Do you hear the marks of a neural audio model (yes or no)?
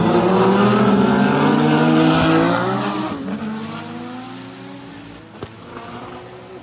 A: no